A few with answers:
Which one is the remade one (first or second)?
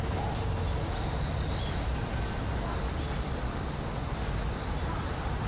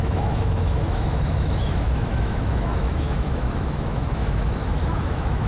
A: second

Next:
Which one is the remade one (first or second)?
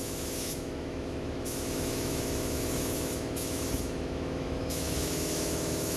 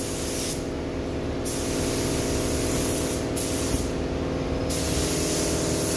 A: first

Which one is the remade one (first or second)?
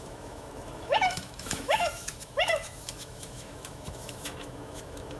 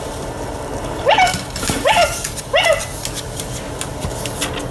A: first